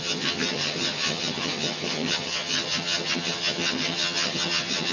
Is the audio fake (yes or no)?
yes